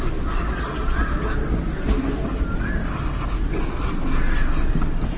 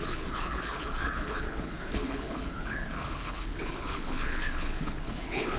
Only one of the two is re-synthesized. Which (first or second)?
second